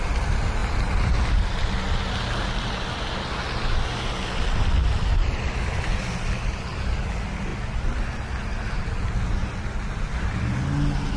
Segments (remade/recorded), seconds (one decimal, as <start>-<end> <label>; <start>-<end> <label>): 0.0-0.6 recorded; 0.6-1.1 remade; 1.1-4.8 recorded; 4.8-6.0 remade; 6.0-11.2 recorded